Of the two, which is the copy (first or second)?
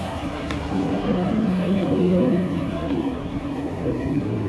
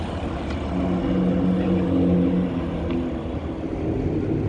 first